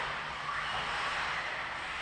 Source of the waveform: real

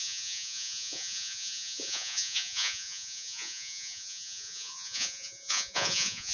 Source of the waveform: fake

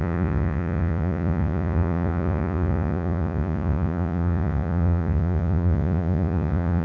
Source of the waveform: fake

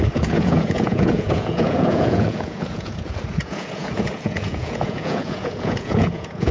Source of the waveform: fake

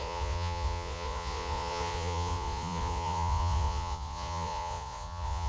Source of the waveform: fake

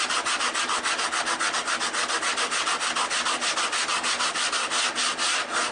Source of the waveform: real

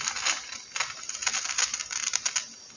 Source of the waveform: real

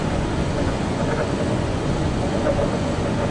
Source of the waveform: fake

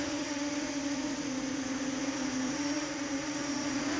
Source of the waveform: fake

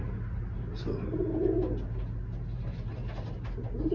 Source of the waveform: real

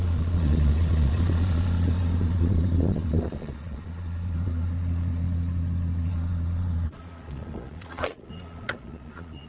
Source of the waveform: fake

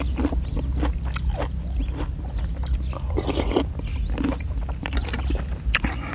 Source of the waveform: real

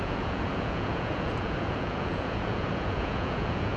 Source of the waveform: fake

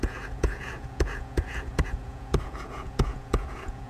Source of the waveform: fake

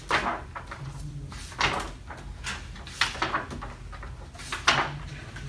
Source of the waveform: real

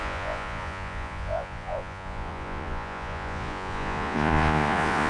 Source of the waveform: fake